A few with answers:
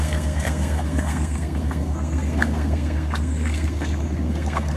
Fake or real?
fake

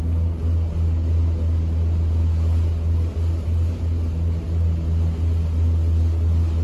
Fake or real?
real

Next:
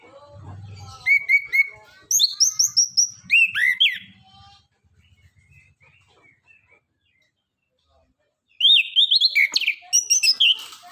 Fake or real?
real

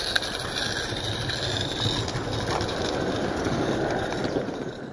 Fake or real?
real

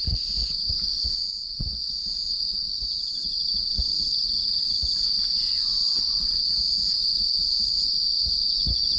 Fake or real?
real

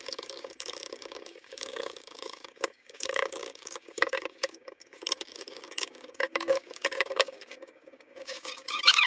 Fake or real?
fake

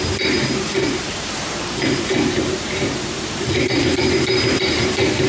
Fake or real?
fake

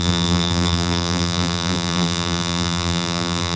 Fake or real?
fake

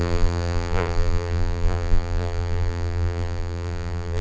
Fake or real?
fake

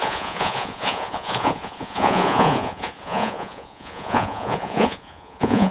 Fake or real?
fake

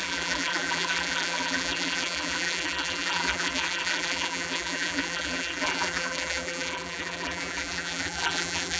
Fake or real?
fake